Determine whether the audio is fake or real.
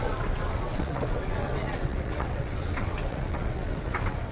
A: fake